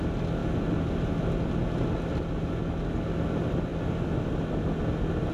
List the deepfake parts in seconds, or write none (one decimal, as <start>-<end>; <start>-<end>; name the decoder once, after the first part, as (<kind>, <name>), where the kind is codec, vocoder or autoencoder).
none